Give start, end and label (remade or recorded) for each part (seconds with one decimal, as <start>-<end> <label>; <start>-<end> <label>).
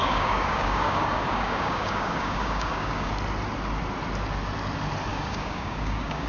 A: 0.0-3.1 remade; 3.1-5.1 recorded; 5.1-6.3 remade